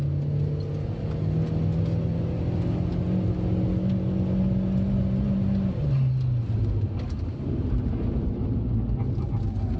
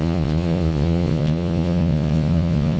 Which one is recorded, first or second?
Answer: first